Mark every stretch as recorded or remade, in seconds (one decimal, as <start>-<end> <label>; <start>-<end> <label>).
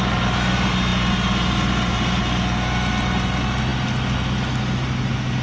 0.0-5.4 recorded